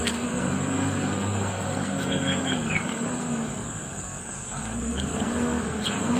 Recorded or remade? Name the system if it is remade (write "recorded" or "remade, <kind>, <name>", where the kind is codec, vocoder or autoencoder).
remade, codec, SNAC